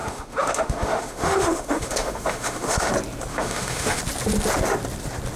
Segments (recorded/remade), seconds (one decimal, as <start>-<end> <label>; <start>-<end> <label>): 0.0-2.9 remade; 2.9-3.3 recorded; 3.3-4.0 remade; 4.0-5.4 recorded